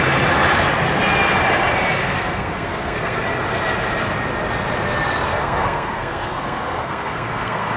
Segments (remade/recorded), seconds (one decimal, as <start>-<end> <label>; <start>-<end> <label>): 0.0-2.0 recorded; 2.0-3.2 remade; 3.2-5.3 recorded; 5.3-7.8 remade